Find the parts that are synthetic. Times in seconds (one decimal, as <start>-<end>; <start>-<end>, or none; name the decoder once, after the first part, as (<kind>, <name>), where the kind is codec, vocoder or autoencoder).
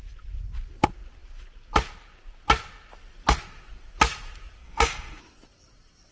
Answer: 4.6-5.2 (codec, DAC)